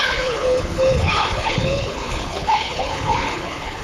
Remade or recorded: remade